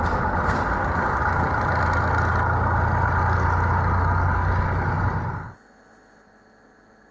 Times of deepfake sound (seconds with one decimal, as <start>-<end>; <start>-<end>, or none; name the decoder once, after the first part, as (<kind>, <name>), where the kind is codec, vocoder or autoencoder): none